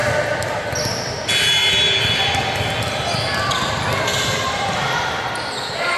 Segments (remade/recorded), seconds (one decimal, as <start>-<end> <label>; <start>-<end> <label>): 0.0-6.0 recorded